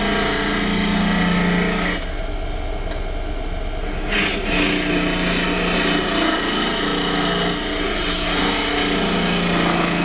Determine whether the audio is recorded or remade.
recorded